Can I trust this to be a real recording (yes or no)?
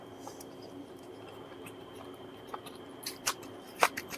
no